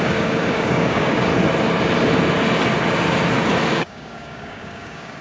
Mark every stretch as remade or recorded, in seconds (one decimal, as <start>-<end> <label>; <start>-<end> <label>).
0.0-1.3 remade; 1.3-3.7 recorded; 3.7-5.2 remade